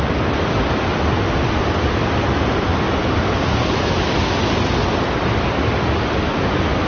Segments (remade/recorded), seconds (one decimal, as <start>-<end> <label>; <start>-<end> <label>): 0.0-6.9 recorded